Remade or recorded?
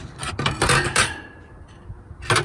recorded